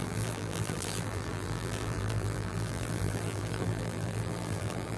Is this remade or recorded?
remade